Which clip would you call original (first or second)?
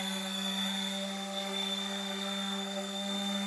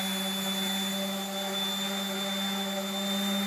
second